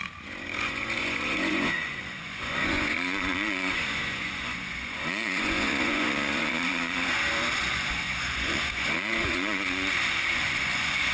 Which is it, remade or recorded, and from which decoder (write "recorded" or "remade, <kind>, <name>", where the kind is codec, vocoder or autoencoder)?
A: remade, vocoder, Vocos